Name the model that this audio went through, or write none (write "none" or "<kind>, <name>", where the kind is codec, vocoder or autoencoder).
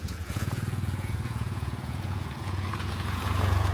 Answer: vocoder, Vocos